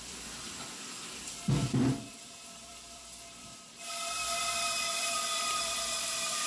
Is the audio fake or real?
fake